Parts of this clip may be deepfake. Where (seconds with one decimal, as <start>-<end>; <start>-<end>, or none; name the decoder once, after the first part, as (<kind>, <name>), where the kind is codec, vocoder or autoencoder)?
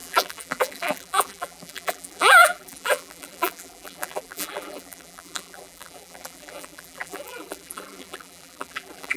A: 0.0-9.2 (vocoder, BigVGAN v2)